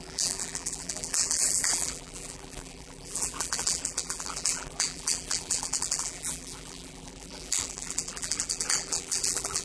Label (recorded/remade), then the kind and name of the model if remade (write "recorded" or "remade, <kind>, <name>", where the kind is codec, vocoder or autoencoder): remade, vocoder, BigVGAN v2